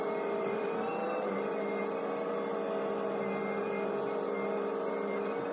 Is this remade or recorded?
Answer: recorded